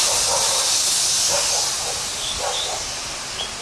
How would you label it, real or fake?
real